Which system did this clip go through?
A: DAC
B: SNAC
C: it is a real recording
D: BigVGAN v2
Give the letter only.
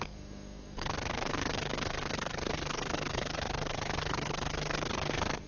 B